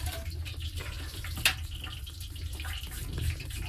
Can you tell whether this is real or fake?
real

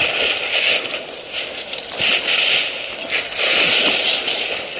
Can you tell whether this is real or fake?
real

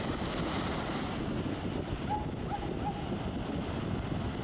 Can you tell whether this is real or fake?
real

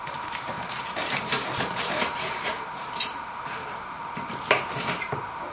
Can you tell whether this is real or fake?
fake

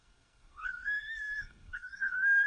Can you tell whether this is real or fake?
fake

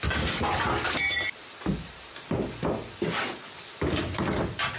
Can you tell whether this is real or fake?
real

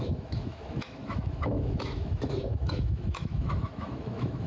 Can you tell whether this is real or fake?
fake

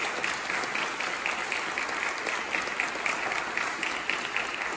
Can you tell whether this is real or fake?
real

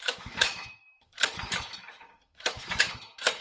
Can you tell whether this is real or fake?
fake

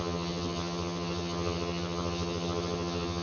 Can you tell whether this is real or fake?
fake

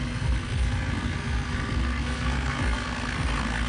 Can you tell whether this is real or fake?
fake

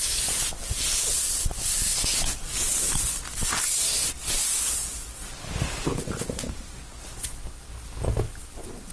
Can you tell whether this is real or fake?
real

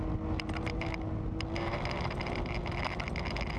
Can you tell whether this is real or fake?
real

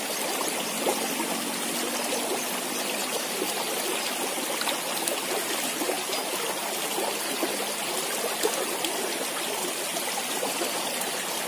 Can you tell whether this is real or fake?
real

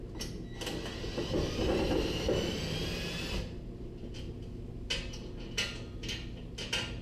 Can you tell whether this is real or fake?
real